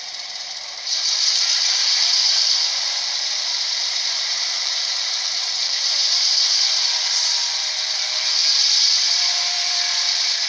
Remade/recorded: remade